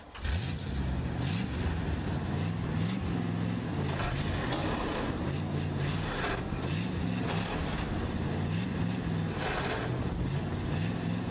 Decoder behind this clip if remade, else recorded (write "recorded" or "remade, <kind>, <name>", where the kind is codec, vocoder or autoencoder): recorded